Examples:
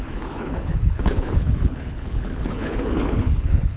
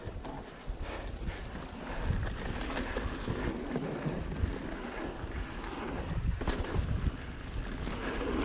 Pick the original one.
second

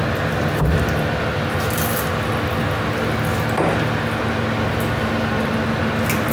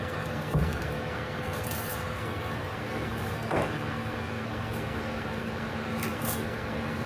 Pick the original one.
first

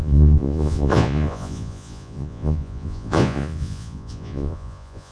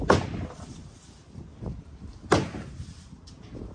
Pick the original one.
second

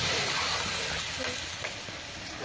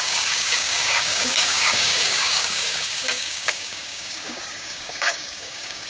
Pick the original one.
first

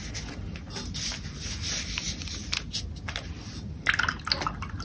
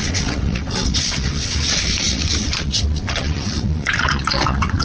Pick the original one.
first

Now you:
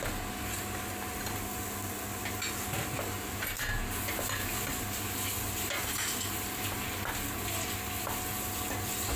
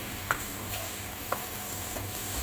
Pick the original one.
first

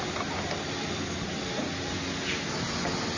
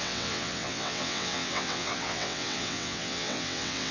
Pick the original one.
first